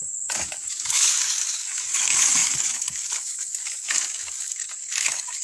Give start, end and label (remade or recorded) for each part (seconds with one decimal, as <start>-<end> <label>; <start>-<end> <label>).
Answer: 0.0-5.4 remade